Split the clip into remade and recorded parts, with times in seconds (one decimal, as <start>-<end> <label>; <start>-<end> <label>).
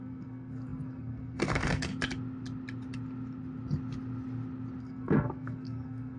0.0-1.9 remade; 1.9-4.8 recorded; 4.8-6.2 remade